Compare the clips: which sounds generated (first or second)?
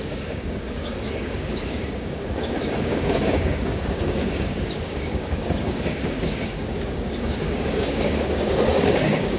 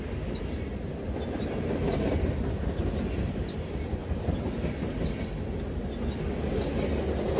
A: first